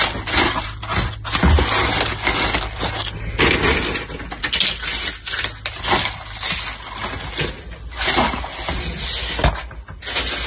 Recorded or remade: recorded